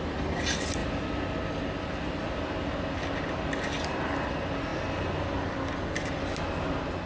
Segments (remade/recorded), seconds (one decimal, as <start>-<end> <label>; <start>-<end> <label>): 0.0-7.1 recorded